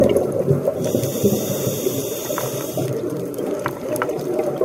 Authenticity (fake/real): fake